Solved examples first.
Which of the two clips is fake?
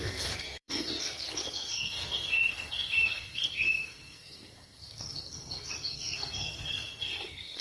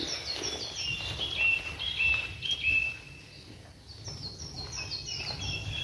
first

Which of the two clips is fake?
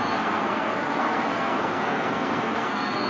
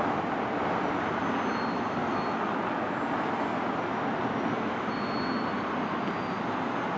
first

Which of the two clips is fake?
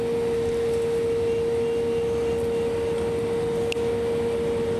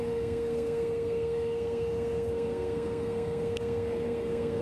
second